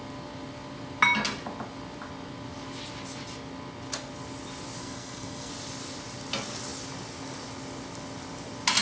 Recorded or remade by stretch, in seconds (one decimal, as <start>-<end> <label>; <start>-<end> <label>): 0.0-4.8 recorded; 4.8-5.5 remade; 5.5-8.8 recorded